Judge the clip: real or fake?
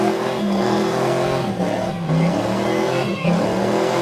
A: fake